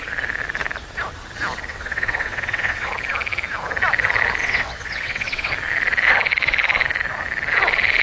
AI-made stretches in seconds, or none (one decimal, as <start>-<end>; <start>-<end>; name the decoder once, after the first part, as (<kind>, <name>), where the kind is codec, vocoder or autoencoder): 1.7-2.9 (vocoder, WaveNeXt); 4.4-5.5